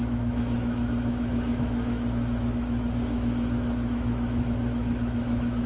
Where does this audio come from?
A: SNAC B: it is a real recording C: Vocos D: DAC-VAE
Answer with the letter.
D